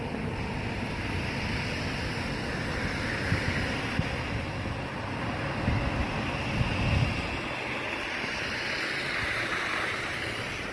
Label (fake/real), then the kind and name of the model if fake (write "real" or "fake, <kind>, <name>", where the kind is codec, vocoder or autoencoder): real